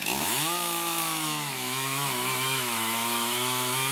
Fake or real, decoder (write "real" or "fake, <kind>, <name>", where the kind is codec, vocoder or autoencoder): fake, autoencoder, DAC-VAE